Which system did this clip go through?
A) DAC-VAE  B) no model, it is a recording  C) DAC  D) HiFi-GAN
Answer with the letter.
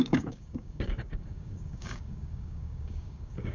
C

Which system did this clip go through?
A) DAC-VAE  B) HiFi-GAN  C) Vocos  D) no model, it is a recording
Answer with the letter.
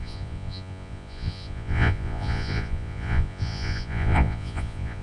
C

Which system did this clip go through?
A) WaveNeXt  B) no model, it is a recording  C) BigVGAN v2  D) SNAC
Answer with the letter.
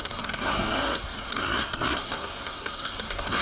D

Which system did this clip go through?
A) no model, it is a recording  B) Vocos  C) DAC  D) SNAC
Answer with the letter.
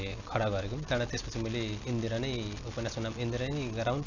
A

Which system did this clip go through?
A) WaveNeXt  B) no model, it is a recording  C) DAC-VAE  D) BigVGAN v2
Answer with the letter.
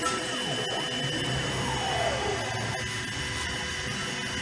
B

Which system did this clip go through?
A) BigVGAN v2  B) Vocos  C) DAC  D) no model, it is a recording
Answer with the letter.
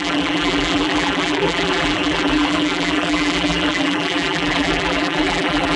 A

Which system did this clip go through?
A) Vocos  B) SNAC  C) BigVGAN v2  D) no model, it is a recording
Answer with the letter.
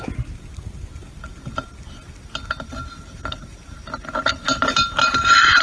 D